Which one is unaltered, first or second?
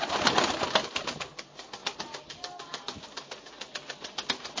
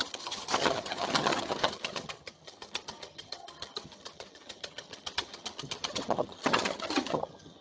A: first